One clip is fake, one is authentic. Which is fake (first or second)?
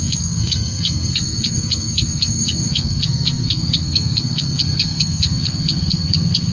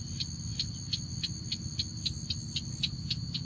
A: first